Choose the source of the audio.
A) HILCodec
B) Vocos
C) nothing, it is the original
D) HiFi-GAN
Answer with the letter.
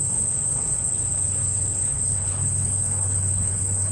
A